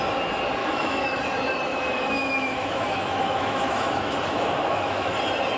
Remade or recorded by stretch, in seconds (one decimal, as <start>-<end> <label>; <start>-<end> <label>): 0.0-0.6 recorded; 0.6-1.2 remade; 1.2-1.7 recorded; 1.7-5.1 remade; 5.1-5.6 recorded